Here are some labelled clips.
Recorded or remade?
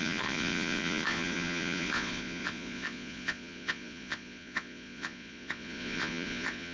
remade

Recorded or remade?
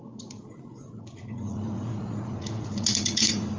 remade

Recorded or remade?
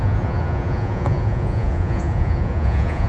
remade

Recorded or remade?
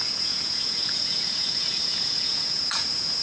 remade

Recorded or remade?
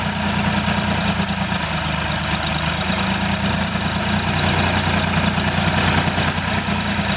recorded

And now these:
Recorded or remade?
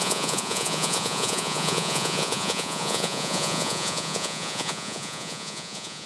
remade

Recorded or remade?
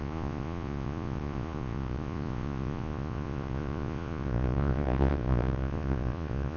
remade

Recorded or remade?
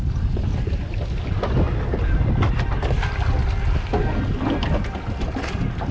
recorded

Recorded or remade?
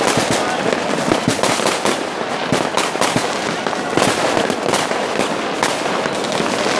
recorded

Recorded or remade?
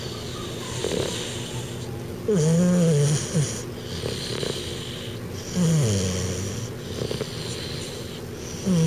recorded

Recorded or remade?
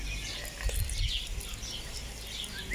recorded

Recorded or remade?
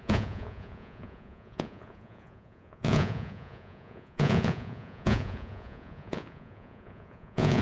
remade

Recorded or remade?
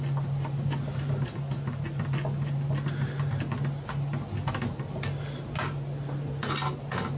recorded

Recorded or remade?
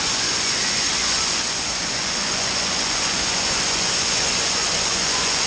remade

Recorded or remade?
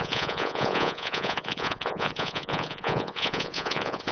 remade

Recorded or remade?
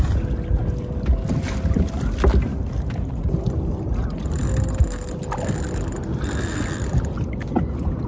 recorded